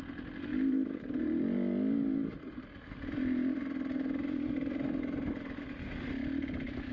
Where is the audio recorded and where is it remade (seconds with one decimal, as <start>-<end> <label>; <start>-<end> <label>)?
0.0-6.9 recorded